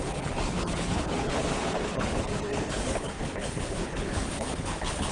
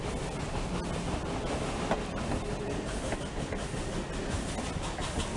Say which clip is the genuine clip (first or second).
second